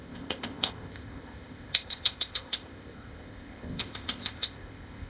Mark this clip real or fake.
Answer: fake